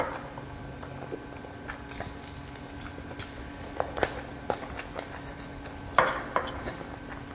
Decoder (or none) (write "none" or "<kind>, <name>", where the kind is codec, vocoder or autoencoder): none